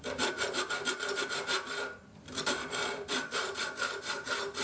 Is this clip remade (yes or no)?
yes